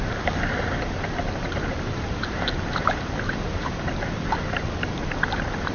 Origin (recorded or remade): remade